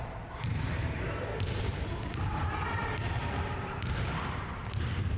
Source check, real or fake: fake